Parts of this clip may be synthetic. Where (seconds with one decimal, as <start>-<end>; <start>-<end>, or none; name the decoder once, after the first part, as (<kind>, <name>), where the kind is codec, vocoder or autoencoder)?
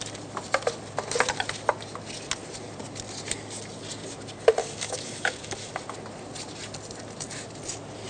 4.6-5.7 (codec, DAC)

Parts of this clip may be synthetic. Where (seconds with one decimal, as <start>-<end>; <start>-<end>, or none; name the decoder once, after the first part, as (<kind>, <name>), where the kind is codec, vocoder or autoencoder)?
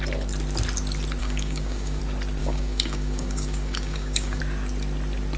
1.2-2.0 (codec, DAC); 2.4-4.4